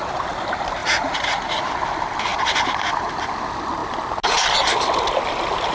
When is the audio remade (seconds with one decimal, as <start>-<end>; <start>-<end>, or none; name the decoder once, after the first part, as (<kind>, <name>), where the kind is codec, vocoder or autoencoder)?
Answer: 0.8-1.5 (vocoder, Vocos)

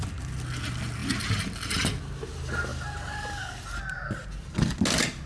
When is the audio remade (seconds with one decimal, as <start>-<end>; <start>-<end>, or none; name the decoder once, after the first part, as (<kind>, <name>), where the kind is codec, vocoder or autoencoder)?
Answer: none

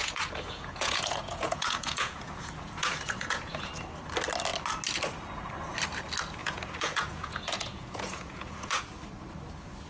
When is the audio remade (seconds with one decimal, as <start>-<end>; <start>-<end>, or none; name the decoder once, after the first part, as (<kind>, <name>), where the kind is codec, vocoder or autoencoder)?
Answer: 0.0-3.7 (vocoder, Vocos); 6.4-8.8

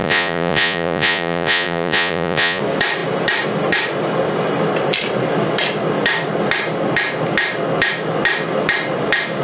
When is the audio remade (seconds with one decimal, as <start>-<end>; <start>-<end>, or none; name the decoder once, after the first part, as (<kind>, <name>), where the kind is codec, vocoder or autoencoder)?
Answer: 0.0-2.6 (vocoder, Vocos)

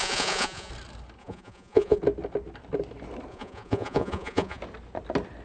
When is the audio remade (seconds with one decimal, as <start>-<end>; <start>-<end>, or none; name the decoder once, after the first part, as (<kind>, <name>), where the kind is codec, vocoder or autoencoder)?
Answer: 0.0-0.7 (vocoder, Vocos); 1.2-2.0; 3.3-4.6

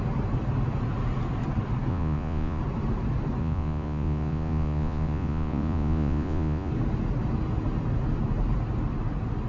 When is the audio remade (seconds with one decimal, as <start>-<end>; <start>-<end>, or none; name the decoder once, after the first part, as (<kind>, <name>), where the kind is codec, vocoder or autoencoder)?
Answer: 1.9-2.6 (vocoder, Vocos); 3.4-6.7